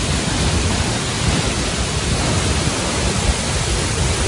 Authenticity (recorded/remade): recorded